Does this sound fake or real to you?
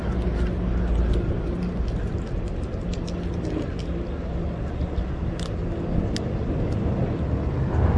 real